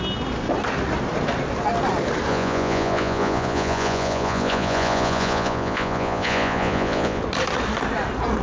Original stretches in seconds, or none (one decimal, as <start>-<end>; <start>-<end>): 0.0-2.3; 7.2-8.4